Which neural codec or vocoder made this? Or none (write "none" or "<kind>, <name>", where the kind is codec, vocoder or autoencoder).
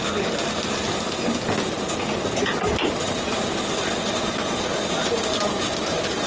none